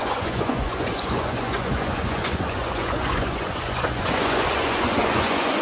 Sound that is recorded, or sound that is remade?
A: remade